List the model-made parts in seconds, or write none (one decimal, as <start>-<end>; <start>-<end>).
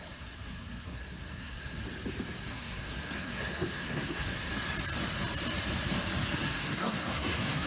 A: 0.0-1.8; 2.5-4.5; 6.5-7.7